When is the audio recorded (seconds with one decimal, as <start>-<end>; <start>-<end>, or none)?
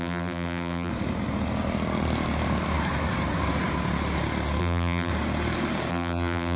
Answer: 0.9-4.6; 5.1-5.9